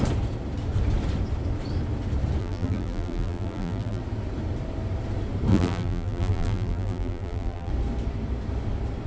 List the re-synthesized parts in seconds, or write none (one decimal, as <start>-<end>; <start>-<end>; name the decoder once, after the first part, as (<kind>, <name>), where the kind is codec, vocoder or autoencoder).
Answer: 2.4-4.0 (vocoder, BigVGAN v2); 5.5-7.7